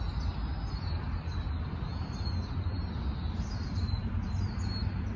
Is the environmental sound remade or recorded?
recorded